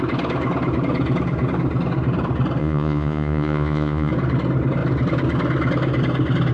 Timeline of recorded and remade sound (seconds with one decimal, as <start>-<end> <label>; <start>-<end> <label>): 0.0-2.6 recorded; 2.6-4.1 remade; 4.1-6.5 recorded